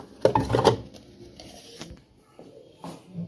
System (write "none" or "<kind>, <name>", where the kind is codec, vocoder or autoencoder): none